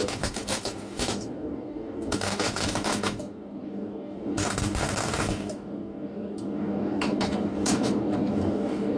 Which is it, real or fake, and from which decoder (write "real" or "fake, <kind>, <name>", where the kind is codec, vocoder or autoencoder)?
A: fake, codec, DAC